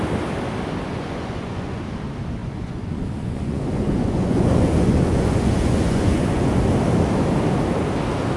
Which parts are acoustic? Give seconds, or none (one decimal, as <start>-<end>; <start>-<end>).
0.0-0.9; 1.8-2.4; 6.6-8.4